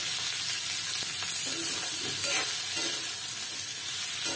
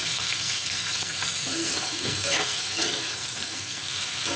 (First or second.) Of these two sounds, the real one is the first